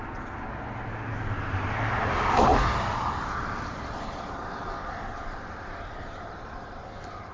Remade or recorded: recorded